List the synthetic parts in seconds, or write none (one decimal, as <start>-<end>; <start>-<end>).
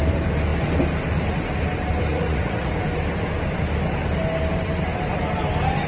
2.1-2.7